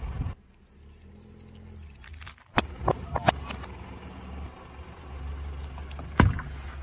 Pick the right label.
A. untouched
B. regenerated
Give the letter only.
A